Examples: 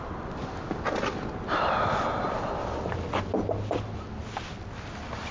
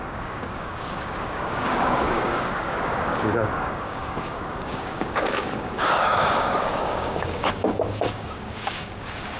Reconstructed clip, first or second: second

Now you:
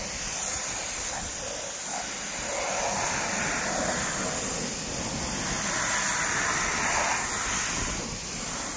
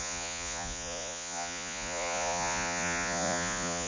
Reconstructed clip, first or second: second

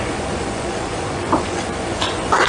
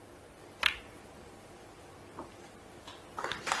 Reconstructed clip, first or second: first